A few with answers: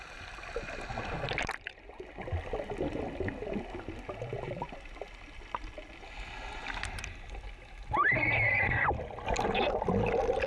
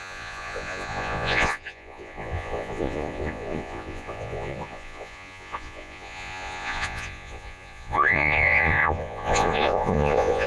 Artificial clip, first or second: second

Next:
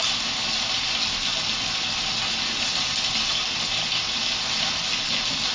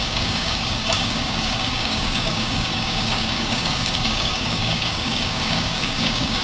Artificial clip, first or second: second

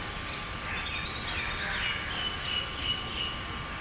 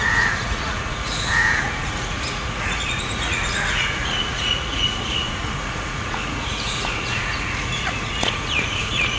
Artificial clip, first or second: second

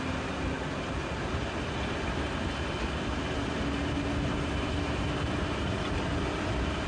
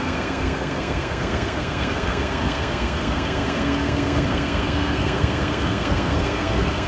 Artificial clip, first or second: second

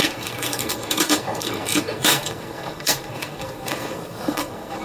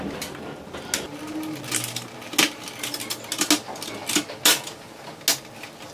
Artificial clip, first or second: first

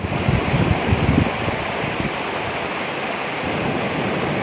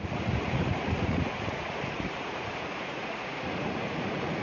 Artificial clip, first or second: second